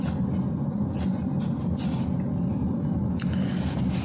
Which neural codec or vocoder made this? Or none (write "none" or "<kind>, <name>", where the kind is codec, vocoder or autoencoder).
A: none